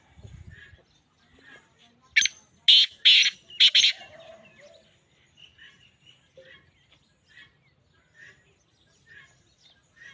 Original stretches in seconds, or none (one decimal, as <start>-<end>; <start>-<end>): 0.0-10.1